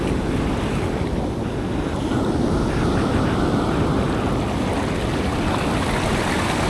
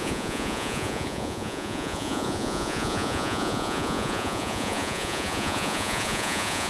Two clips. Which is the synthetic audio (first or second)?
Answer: second